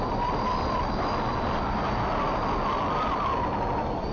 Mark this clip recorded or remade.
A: recorded